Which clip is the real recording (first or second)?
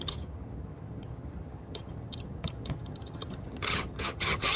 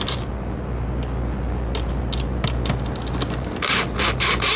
second